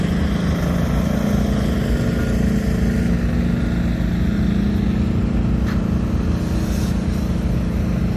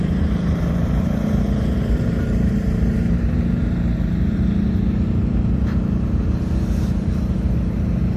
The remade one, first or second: second